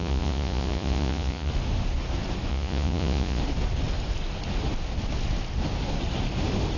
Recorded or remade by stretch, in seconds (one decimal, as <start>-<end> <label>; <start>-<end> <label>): 0.0-1.5 remade; 1.5-2.5 recorded; 2.5-3.4 remade; 3.4-6.8 recorded

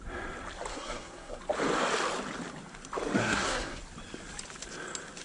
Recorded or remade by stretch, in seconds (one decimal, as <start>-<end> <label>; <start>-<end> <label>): 0.0-0.7 recorded; 0.7-1.4 remade; 1.4-3.2 recorded; 3.2-3.8 remade; 3.8-5.2 recorded

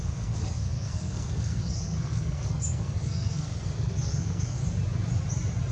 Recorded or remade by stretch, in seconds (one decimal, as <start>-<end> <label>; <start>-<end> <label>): 0.0-4.6 remade; 4.6-5.7 recorded

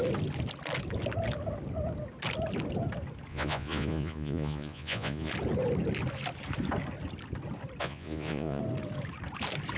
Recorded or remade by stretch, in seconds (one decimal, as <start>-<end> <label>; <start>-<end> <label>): 0.0-3.3 recorded; 3.3-5.3 remade; 5.3-7.8 recorded; 7.8-8.6 remade; 8.6-9.8 recorded

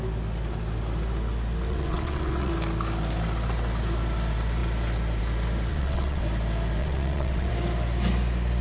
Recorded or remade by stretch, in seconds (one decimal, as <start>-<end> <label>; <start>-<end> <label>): 0.0-1.7 recorded; 1.7-2.5 remade; 2.5-5.7 recorded; 5.7-6.2 remade; 6.2-6.8 recorded; 6.8-7.5 remade; 7.5-8.6 recorded